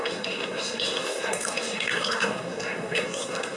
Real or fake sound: fake